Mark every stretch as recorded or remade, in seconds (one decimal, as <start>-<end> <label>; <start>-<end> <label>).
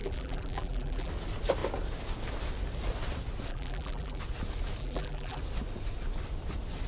0.0-1.1 remade; 1.1-3.5 recorded; 3.5-4.2 remade; 4.2-4.8 recorded; 4.8-5.4 remade; 5.4-6.9 recorded